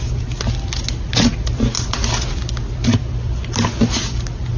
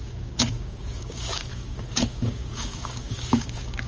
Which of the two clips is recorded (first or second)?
first